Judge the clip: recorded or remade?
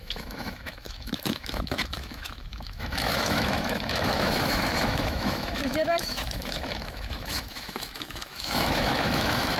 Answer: remade